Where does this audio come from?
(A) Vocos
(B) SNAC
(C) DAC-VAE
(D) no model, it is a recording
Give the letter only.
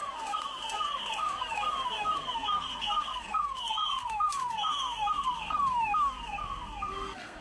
B